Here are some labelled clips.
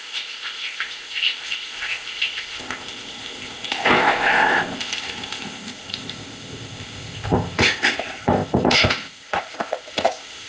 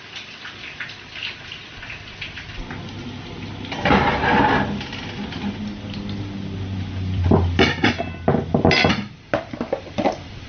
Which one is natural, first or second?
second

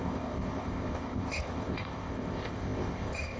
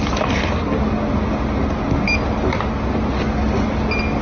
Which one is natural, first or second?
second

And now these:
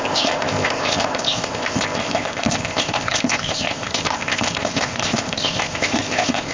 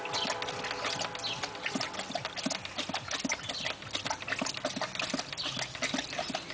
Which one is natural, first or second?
second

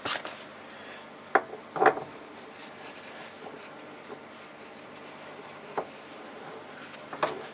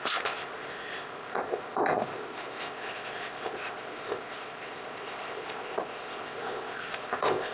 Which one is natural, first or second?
first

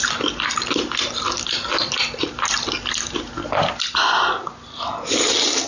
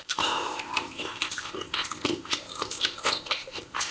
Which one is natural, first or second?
first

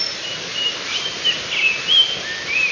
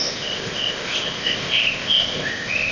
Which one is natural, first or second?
first